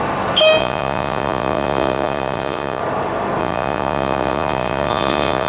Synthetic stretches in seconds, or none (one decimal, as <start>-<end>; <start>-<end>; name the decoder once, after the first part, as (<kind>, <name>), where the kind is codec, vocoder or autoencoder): 0.6-2.8 (vocoder, Vocos); 3.4-5.5